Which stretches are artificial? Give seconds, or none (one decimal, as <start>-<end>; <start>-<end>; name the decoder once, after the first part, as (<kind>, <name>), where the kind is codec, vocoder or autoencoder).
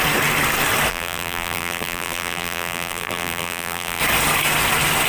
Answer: 0.9-4.0 (vocoder, BigVGAN v2)